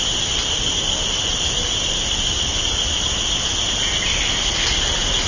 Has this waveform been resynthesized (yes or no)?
no